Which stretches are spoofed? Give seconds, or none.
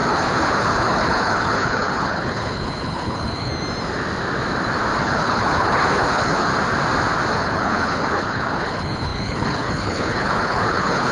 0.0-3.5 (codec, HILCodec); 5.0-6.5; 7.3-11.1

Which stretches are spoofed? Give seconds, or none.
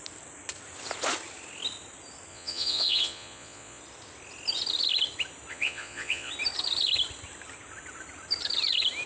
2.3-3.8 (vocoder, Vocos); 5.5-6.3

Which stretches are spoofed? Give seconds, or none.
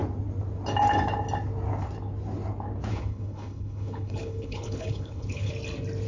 2.9-5.5 (codec, HILCodec)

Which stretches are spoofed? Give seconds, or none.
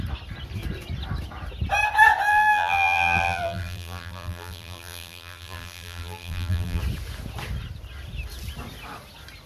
2.3-6.8 (vocoder, BigVGAN v2)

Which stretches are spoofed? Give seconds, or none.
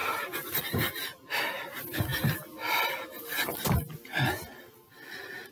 none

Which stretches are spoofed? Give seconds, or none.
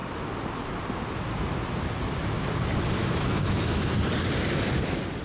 3.0-3.8 (autoencoder, DAC-VAE)